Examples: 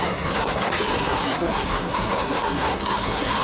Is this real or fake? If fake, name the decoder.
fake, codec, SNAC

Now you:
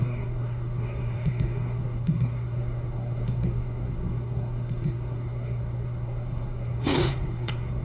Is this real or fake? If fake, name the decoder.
fake, codec, SNAC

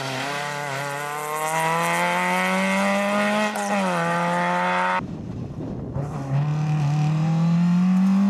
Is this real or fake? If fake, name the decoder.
real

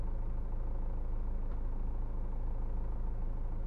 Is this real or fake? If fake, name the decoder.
real